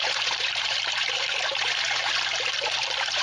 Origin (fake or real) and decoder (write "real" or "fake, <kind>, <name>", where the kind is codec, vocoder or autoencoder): fake, vocoder, BigVGAN v2